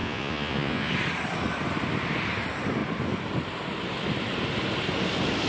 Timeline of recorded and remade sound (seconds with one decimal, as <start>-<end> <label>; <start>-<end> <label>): 0.0-0.9 remade; 0.9-5.5 recorded